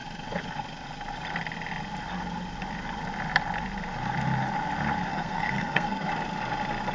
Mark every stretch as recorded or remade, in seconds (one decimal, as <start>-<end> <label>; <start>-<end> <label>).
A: 0.0-5.1 recorded; 5.1-6.1 remade; 6.1-6.9 recorded